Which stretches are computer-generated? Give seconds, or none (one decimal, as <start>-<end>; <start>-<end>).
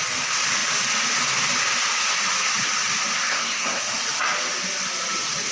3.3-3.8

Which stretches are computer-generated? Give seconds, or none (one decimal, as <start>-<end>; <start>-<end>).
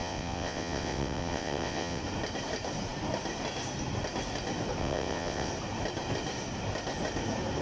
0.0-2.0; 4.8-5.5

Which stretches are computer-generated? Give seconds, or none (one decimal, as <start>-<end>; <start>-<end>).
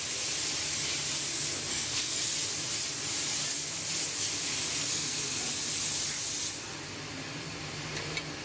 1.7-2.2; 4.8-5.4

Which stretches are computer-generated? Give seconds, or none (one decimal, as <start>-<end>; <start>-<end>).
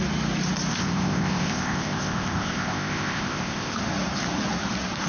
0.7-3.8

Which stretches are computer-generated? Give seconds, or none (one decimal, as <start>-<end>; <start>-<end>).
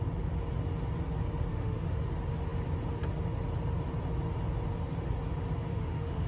1.5-2.0; 5.7-6.3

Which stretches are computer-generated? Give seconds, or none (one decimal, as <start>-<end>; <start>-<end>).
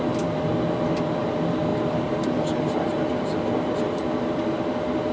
none